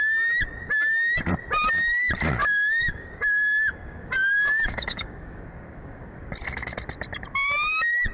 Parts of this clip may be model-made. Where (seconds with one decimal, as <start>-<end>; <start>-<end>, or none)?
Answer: 2.4-6.3